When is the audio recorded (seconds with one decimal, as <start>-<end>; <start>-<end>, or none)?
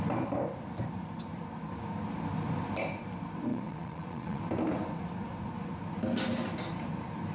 0.0-3.5; 4.4-7.3